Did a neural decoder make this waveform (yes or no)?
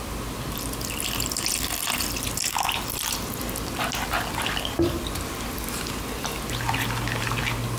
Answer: no